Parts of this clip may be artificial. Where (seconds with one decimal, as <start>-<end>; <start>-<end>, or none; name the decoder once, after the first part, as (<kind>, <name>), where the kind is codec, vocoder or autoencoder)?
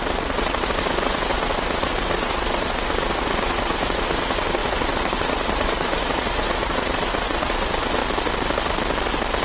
0.0-8.0 (vocoder, Vocos)